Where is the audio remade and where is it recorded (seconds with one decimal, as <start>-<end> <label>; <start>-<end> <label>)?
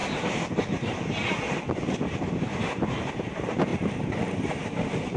0.0-2.6 recorded; 2.6-5.2 remade